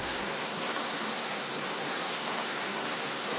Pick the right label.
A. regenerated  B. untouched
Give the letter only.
A